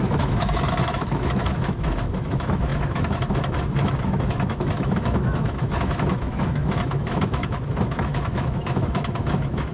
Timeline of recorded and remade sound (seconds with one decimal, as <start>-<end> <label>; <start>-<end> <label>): 0.0-9.7 remade